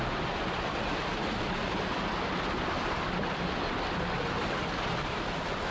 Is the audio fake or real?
real